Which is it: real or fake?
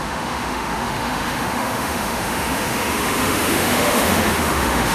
fake